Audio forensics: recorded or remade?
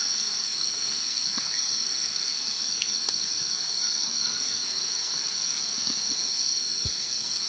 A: remade